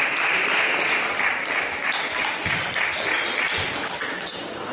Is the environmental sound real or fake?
fake